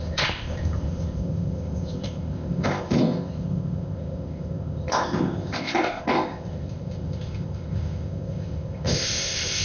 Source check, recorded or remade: remade